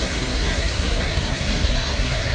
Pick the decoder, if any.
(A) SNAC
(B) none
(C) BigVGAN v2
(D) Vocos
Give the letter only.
A